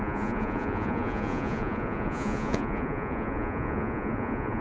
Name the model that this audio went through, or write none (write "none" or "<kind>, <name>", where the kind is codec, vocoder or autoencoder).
vocoder, Vocos